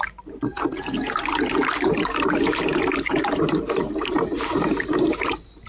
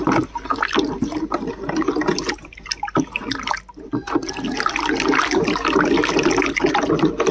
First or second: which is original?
second